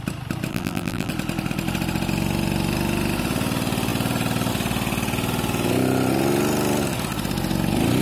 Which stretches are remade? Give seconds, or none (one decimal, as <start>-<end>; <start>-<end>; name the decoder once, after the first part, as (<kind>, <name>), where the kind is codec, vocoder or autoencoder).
0.5-1.1 (vocoder, BigVGAN v2)